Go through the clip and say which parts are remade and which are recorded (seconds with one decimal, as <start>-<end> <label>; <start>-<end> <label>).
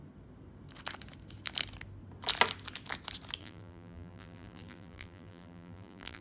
0.0-3.4 recorded; 3.4-6.2 remade